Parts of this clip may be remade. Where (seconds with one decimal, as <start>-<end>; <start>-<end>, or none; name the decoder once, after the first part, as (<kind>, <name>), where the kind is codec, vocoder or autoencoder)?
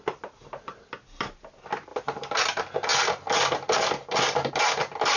1.9-2.4 (vocoder, BigVGAN v2)